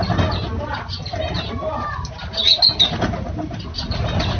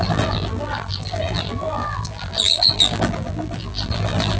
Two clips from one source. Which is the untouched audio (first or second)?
first